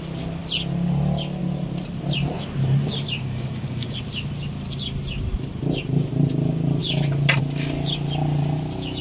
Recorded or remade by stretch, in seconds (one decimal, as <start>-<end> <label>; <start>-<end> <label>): 0.0-3.2 recorded; 3.2-4.0 remade; 4.0-9.0 recorded